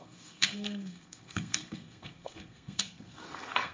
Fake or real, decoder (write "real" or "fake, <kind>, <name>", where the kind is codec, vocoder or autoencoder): fake, codec, SNAC